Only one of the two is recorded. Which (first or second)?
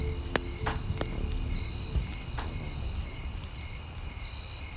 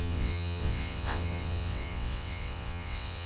first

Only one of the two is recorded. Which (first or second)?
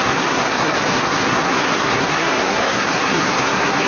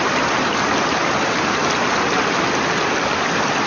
second